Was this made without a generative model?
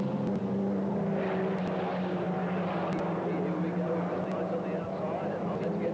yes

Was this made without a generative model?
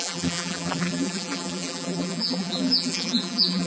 no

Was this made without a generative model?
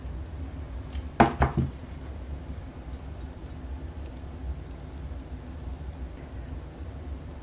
yes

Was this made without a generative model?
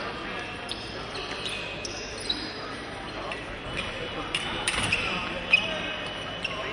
no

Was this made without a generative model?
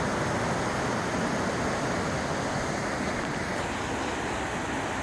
yes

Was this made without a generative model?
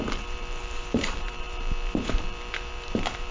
no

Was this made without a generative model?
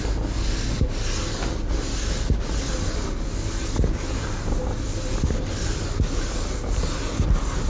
yes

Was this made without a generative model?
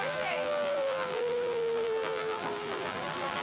no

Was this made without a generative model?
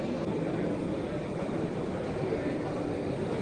no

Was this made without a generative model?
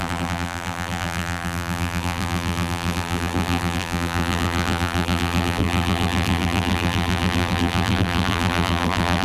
no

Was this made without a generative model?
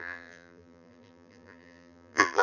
no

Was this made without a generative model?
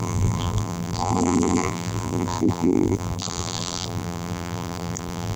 no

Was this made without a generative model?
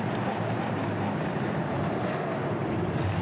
no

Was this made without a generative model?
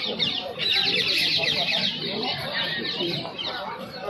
no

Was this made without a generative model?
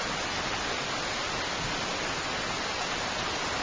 yes